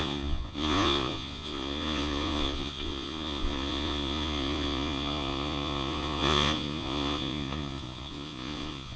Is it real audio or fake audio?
fake